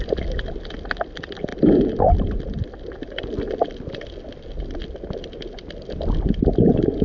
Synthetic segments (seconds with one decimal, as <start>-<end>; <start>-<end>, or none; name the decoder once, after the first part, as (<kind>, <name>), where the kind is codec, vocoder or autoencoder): none